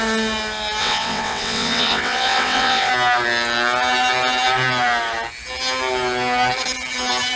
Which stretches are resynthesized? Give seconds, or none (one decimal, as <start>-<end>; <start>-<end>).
0.8-2.9